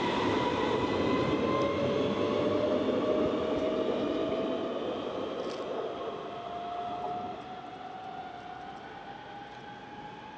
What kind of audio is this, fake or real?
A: real